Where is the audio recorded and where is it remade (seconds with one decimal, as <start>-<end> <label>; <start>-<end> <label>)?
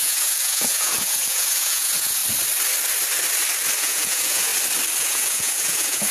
0.0-2.2 remade; 2.2-3.8 recorded; 3.8-4.5 remade; 4.5-5.0 recorded; 5.0-6.1 remade